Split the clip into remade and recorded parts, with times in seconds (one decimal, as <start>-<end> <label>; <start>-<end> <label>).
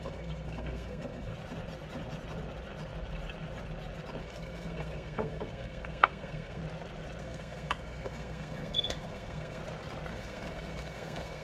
0.0-1.3 remade; 1.3-4.2 recorded; 4.2-6.6 remade; 6.6-7.2 recorded; 7.2-9.6 remade; 9.6-10.1 recorded; 10.1-11.4 remade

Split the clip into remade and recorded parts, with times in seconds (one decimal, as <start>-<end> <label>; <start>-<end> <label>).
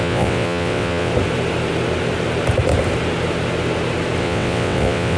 0.0-1.1 remade; 1.1-4.2 recorded; 4.2-5.2 remade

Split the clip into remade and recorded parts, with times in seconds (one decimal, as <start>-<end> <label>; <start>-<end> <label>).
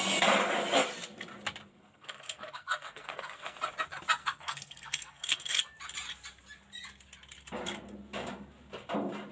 0.0-1.7 recorded; 1.7-3.6 remade; 3.6-4.2 recorded; 4.2-5.6 remade; 5.6-9.3 recorded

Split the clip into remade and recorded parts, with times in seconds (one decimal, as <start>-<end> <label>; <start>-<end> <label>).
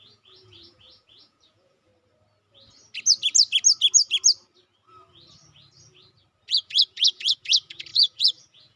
0.0-1.9 remade; 1.9-6.5 recorded; 6.5-8.8 remade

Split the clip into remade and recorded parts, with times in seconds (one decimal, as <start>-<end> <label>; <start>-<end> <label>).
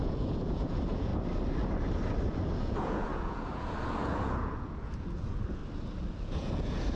0.0-1.1 remade; 1.1-2.4 recorded; 2.4-5.6 remade; 5.6-6.1 recorded; 6.1-7.0 remade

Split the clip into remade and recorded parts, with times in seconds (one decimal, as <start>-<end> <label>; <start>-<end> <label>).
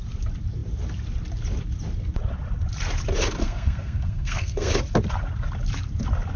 0.0-3.4 recorded; 3.4-4.8 remade; 4.8-6.4 recorded